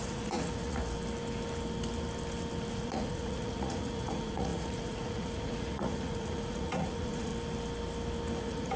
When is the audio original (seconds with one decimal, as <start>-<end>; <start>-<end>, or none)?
0.8-2.7; 7.3-8.4